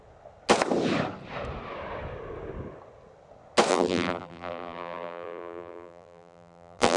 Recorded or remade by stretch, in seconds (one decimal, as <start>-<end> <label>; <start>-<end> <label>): 0.0-3.7 recorded; 3.7-7.0 remade